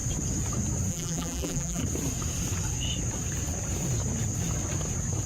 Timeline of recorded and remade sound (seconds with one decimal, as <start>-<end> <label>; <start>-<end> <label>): 0.0-0.9 recorded; 0.9-1.8 remade; 1.8-5.3 recorded